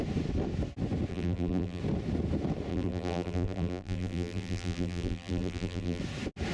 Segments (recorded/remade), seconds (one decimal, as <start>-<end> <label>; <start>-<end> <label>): 0.0-1.1 recorded; 1.1-1.8 remade; 1.8-2.7 recorded; 2.7-6.0 remade; 6.0-6.5 recorded